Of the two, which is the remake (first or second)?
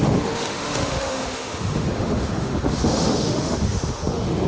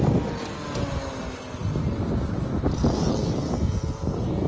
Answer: first